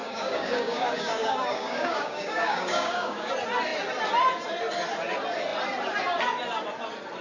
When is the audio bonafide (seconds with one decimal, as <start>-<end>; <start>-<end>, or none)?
3.3-7.2